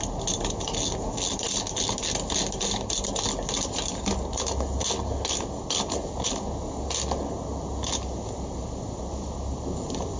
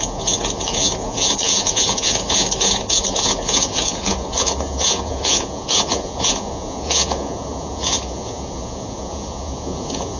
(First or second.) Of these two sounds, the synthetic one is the second